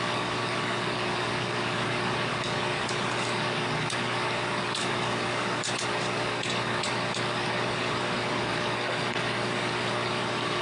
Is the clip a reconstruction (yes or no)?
yes